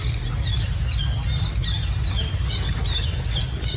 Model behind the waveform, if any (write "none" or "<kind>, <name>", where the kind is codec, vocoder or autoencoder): none